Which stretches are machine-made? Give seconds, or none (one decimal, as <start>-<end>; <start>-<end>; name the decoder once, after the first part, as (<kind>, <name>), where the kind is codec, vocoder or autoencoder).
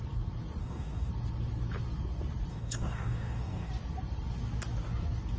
0.6-1.1 (codec, DAC); 2.5-3.7